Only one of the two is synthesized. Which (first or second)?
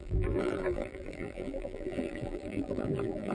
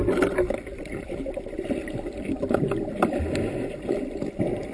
first